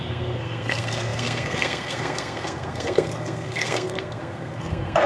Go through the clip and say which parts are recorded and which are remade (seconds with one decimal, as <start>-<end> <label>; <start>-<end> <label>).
0.0-5.1 remade